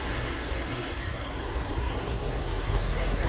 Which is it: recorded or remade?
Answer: remade